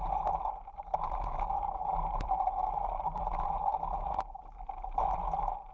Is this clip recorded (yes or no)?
yes